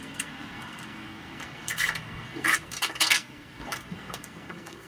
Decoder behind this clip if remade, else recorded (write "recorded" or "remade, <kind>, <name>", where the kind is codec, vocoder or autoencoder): remade, codec, SNAC